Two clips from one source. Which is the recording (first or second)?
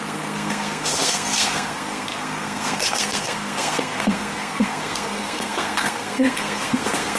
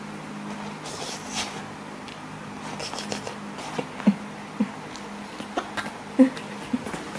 second